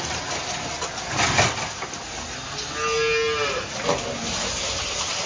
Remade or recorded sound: recorded